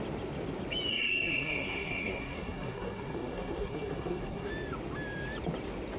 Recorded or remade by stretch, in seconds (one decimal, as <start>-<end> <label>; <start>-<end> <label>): 0.0-0.9 recorded; 0.9-4.5 remade; 4.5-6.0 recorded